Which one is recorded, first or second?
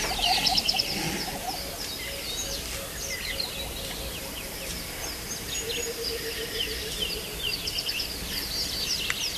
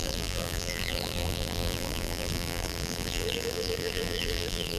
first